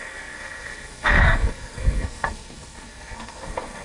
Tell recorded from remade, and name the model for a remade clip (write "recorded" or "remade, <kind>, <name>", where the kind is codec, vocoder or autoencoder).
remade, codec, SNAC